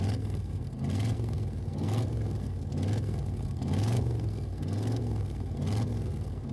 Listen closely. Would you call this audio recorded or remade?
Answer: remade